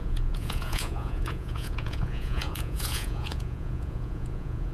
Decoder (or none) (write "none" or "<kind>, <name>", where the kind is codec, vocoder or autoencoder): vocoder, Vocos